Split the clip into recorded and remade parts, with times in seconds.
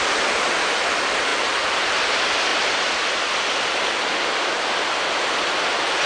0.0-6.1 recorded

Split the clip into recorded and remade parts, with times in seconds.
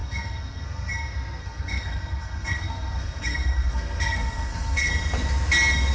0.0-0.9 remade; 0.9-1.4 recorded; 1.4-4.9 remade; 4.9-5.9 recorded